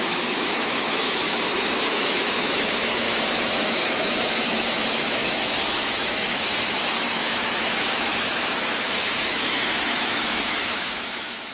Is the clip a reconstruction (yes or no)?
yes